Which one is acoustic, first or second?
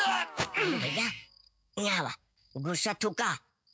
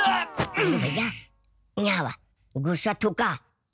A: second